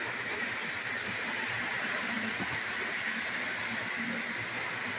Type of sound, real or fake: real